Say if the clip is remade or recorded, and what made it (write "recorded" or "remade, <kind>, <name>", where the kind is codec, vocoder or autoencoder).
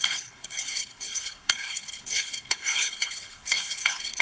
remade, codec, HILCodec